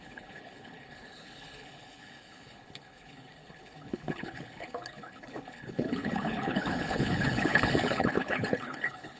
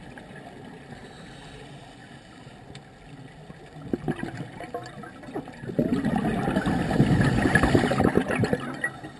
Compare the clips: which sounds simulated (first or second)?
first